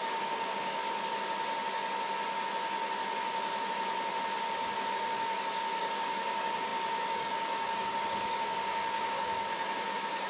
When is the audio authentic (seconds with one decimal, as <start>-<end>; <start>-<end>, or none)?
0.8-4.9